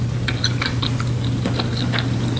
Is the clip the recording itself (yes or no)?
yes